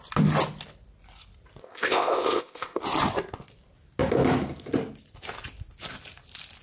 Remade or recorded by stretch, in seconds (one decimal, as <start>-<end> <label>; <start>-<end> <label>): 0.0-1.6 recorded; 1.6-2.8 remade; 2.8-6.6 recorded